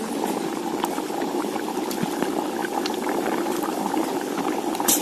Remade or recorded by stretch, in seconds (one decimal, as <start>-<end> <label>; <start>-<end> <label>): 0.0-2.6 recorded; 2.6-4.2 remade; 4.2-5.0 recorded

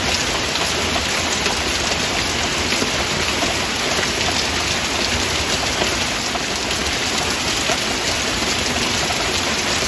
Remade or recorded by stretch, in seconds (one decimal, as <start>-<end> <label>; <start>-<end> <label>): 0.0-9.9 recorded

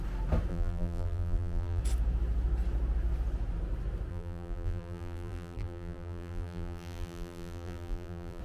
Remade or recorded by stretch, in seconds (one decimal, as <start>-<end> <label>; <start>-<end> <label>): 0.0-0.5 recorded; 0.5-1.8 remade; 1.8-4.1 recorded; 4.1-8.4 remade

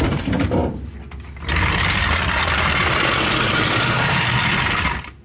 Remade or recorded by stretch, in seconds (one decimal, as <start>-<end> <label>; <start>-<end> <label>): 0.0-5.2 recorded

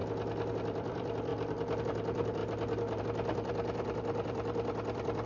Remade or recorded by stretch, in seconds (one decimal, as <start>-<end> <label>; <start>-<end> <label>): 0.0-0.5 recorded; 0.5-1.3 remade; 1.3-1.8 recorded; 1.8-2.4 remade; 2.4-3.0 recorded; 3.0-5.3 remade

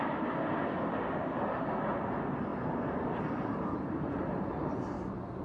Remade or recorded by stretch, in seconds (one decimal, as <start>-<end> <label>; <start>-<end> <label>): 0.0-2.5 recorded; 2.5-4.9 remade; 4.9-5.4 recorded

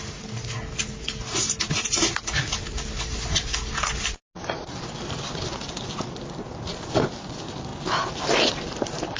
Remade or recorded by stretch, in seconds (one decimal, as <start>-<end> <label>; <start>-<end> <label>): 0.0-9.2 recorded